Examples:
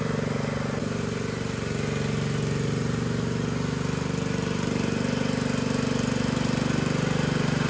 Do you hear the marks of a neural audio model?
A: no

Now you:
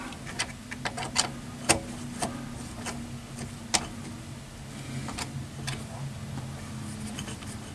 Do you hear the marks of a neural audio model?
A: no